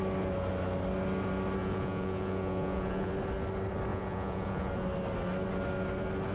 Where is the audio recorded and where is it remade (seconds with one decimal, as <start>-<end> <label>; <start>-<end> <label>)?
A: 0.0-1.6 recorded; 1.6-3.1 remade; 3.1-3.9 recorded; 3.9-4.7 remade; 4.7-6.3 recorded